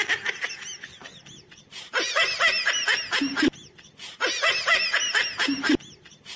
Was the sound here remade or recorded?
recorded